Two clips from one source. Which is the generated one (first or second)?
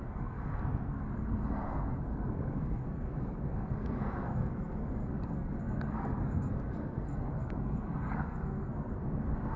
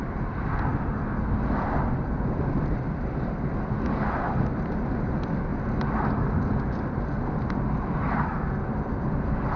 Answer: first